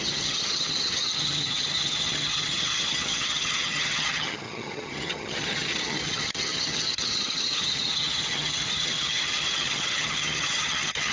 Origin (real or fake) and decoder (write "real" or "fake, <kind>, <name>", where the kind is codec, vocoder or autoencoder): fake, vocoder, HiFi-GAN